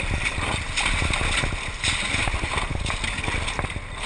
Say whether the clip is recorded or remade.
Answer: recorded